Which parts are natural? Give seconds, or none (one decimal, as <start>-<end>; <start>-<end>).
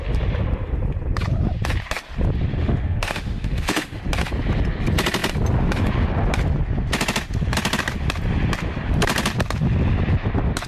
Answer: 0.0-2.6; 4.0-10.7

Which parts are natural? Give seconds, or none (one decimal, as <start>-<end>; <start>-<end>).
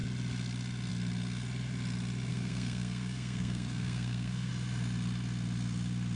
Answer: 0.0-2.3; 4.5-6.2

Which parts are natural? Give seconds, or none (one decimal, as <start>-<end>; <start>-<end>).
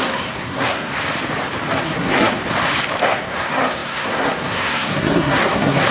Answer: 0.9-1.8; 2.4-3.0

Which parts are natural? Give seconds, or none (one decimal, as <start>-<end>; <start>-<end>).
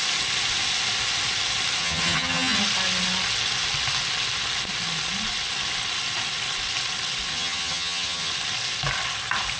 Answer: 0.0-1.8; 2.6-7.3; 8.3-9.6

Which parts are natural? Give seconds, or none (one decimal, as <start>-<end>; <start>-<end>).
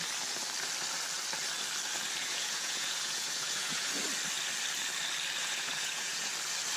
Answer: 0.0-2.2; 3.9-5.4; 6.3-6.8